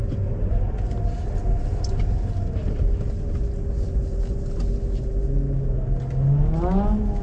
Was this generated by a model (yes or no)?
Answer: no